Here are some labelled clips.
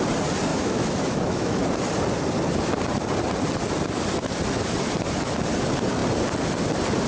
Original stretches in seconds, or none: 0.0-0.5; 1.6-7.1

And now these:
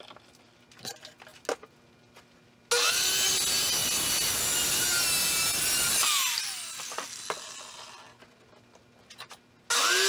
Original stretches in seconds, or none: 0.0-10.1

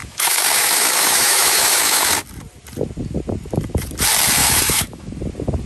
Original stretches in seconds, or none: 2.1-4.4; 5.1-5.7

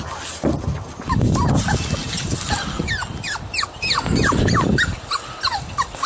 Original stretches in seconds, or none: 0.0-6.1

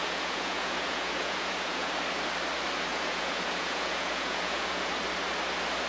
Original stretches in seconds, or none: 1.9-2.9; 4.9-5.9

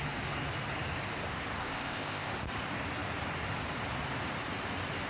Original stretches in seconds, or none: 0.0-1.6; 2.3-5.1

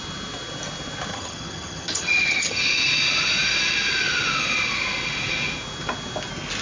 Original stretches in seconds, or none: 0.0-1.1; 2.6-6.6

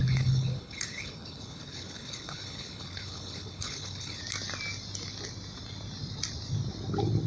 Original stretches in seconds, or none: 4.2-7.3